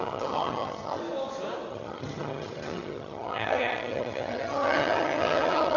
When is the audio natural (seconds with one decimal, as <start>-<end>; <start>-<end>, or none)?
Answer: 1.0-1.7